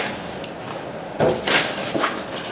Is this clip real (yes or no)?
yes